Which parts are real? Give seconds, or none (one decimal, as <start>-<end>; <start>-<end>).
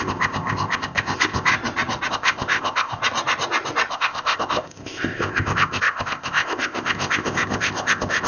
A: 1.5-2.1; 3.0-3.9